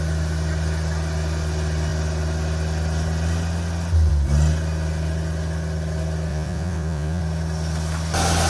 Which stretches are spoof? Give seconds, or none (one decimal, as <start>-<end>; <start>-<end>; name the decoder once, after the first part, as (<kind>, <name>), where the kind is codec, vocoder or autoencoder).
6.3-7.2 (vocoder, Vocos)